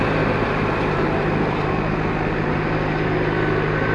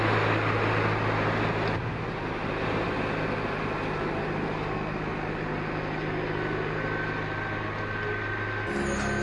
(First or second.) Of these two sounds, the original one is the second